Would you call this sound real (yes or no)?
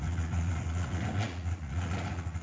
no